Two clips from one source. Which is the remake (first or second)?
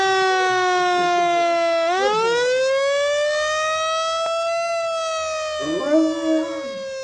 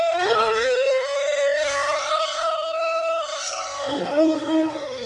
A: second